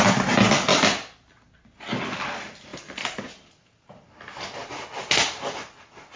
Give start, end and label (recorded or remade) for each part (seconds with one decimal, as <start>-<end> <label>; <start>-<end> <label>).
0.0-6.2 recorded